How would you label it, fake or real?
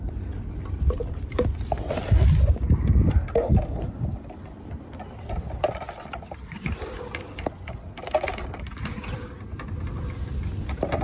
fake